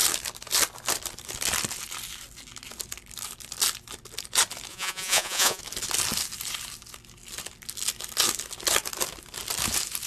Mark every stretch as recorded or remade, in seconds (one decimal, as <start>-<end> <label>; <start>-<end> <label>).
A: 0.0-4.7 recorded; 4.7-5.6 remade; 5.6-10.1 recorded